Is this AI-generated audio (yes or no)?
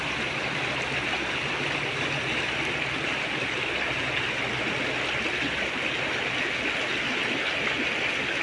no